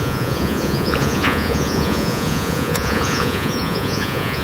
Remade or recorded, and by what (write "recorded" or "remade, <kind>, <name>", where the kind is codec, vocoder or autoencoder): remade, vocoder, Vocos